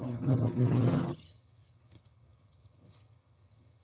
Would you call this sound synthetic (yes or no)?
yes